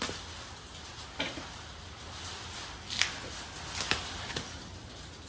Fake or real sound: real